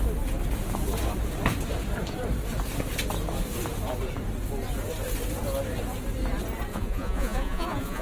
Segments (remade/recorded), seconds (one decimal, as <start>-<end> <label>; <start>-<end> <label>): 0.0-6.7 recorded; 6.7-8.0 remade